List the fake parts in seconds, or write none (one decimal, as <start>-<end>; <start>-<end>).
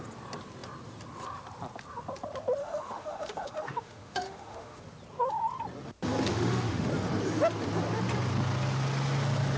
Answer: 2.6-4.8; 6.3-6.9